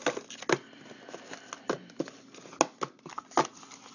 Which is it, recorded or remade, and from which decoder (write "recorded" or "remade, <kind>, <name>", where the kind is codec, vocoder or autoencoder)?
recorded